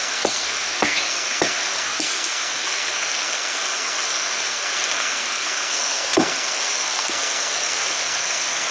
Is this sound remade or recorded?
remade